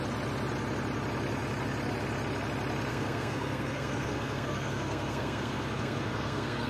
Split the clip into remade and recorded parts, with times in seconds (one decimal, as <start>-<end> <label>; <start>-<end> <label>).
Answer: 0.0-2.9 recorded; 2.9-6.7 remade